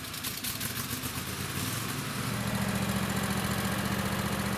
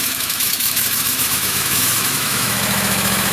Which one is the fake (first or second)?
second